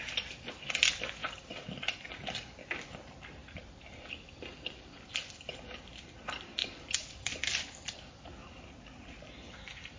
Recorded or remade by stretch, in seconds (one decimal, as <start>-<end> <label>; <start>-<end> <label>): 0.0-10.0 recorded